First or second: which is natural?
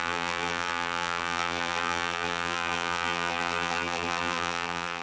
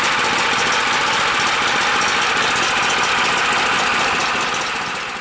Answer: second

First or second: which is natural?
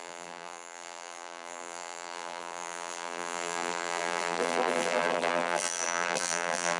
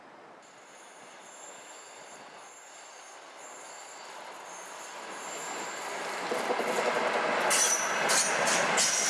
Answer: second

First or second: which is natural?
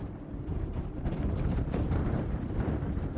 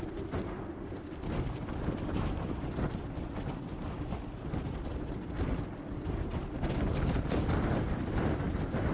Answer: second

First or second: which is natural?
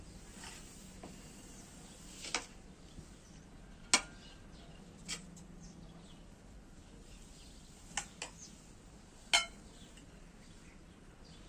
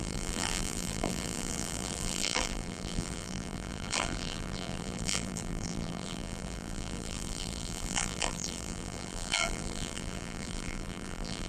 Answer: first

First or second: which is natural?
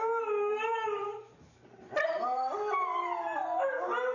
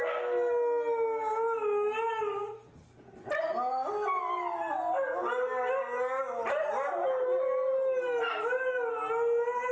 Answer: second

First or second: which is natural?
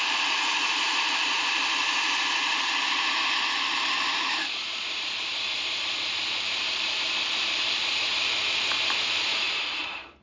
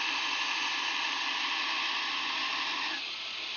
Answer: second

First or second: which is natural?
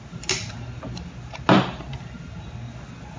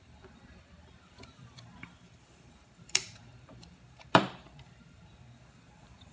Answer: first